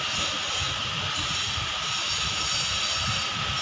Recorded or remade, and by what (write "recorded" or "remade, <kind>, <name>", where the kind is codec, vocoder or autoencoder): recorded